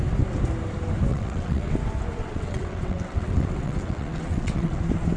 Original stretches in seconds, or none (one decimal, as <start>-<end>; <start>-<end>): 0.0-1.1; 1.7-2.2; 4.8-5.2